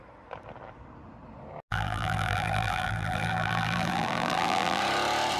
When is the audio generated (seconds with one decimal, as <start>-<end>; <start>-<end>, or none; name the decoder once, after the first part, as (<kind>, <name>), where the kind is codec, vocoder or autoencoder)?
1.7-4.8 (vocoder, BigVGAN v2)